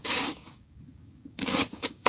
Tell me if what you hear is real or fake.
fake